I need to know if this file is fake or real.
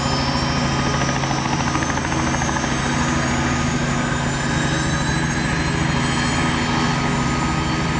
real